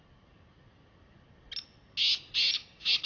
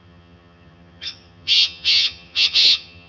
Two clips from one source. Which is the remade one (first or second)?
second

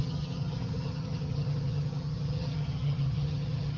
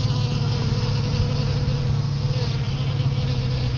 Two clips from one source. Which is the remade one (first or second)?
first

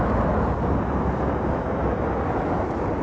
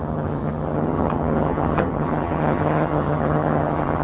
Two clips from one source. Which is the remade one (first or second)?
second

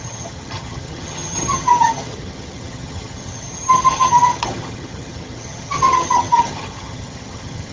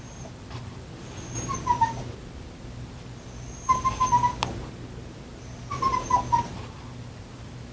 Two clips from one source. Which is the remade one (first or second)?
first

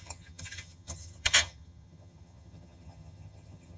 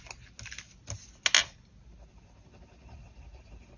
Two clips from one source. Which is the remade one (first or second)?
first